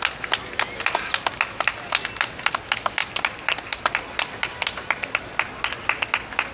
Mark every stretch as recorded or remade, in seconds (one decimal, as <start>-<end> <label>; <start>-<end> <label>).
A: 0.0-3.0 recorded; 3.0-3.9 remade; 3.9-6.5 recorded